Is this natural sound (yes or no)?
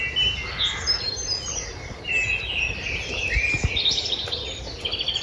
yes